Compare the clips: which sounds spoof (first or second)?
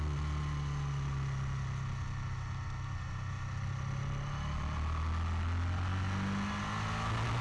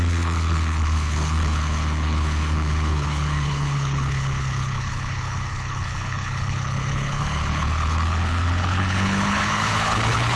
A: second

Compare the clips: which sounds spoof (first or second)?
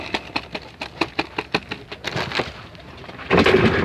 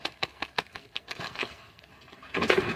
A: second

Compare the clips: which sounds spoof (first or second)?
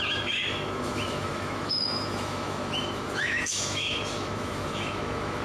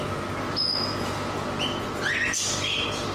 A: first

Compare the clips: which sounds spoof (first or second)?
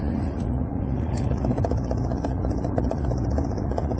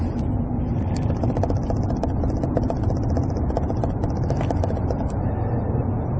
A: first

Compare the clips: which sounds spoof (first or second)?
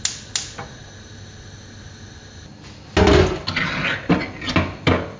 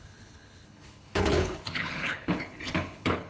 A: second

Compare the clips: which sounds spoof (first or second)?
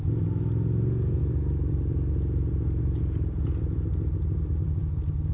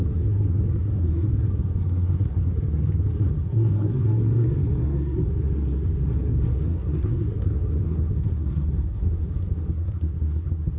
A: second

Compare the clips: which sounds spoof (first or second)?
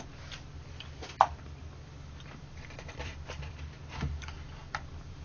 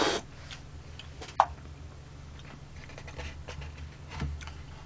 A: first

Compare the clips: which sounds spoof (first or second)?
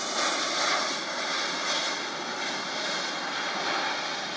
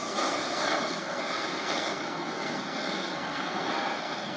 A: second